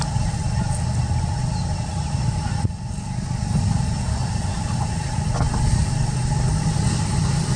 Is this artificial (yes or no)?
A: no